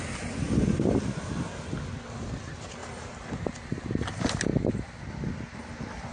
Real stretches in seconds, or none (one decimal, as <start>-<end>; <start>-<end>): 0.0-6.1